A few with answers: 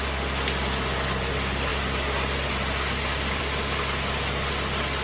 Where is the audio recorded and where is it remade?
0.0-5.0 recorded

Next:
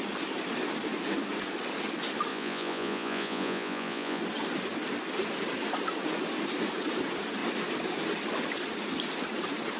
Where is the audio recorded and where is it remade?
0.0-2.3 recorded; 2.3-4.2 remade; 4.2-9.8 recorded

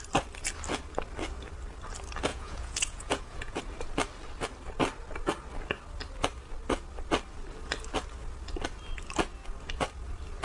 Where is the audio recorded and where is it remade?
0.0-2.3 recorded; 2.3-3.6 remade; 3.6-10.4 recorded

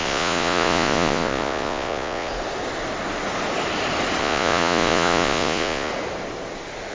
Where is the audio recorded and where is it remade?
0.0-2.3 remade; 2.3-4.2 recorded; 4.2-5.9 remade; 5.9-6.9 recorded

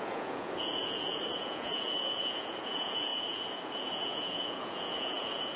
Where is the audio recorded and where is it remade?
0.0-5.6 remade

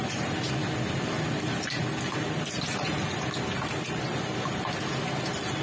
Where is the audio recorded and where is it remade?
0.0-5.6 recorded

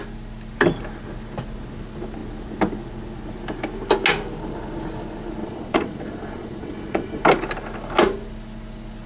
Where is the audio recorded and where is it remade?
0.0-5.4 recorded; 5.4-7.2 remade; 7.2-9.1 recorded

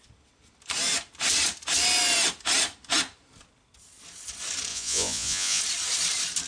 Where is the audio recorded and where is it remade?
0.0-4.7 recorded; 4.7-5.6 remade; 5.6-6.5 recorded